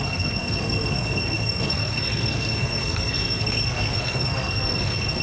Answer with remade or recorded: remade